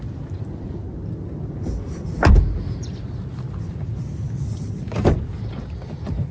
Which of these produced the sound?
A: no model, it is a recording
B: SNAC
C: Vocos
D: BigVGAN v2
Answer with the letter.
A